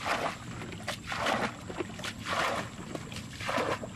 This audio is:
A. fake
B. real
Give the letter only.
B